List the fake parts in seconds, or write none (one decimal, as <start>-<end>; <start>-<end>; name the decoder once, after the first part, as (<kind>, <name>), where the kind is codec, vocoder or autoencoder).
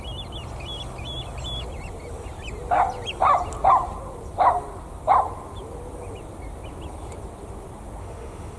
8.0-8.6 (autoencoder, DAC-VAE)